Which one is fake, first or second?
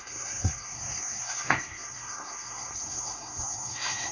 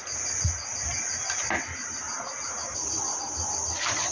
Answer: first